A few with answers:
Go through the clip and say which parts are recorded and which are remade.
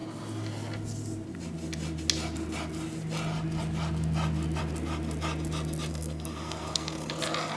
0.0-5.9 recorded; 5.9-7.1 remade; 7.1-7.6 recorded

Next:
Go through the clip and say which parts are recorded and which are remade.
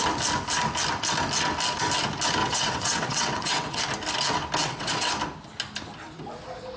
0.0-2.4 recorded; 2.4-3.8 remade; 3.8-4.6 recorded; 4.6-5.1 remade; 5.1-6.8 recorded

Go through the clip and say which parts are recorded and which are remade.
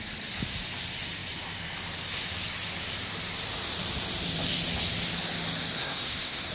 0.0-5.8 recorded; 5.8-6.5 remade